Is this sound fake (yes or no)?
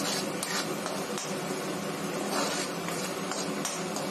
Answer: no